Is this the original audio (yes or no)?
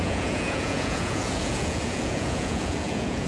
no